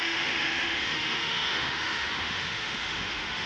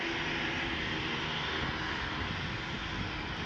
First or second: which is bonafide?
second